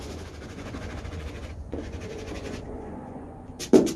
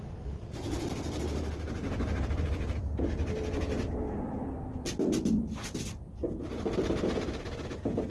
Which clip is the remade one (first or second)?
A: first